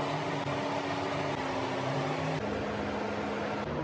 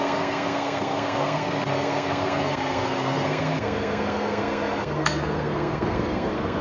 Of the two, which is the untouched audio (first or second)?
first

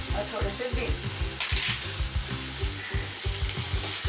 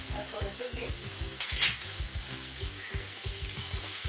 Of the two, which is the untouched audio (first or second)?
first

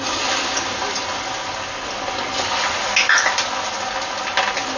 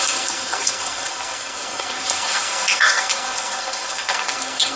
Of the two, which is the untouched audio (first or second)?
first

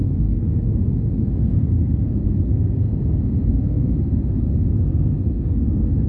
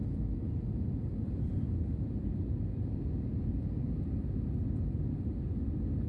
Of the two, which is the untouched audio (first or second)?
second